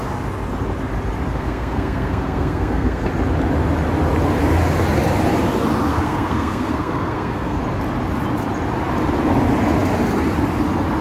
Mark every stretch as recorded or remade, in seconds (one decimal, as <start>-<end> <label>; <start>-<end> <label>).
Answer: 0.0-1.3 recorded; 1.3-3.1 remade; 3.1-5.9 recorded; 5.9-7.6 remade; 7.6-11.0 recorded